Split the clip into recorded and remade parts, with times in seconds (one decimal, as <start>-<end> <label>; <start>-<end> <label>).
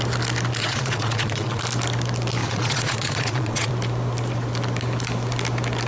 0.0-0.6 recorded; 0.6-1.6 remade; 1.6-2.4 recorded; 2.4-3.7 remade; 3.7-5.9 recorded